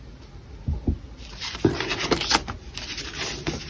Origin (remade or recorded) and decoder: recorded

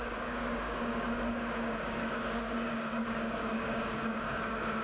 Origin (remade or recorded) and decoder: remade, codec, DAC